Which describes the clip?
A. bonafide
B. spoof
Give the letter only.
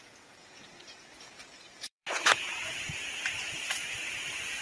B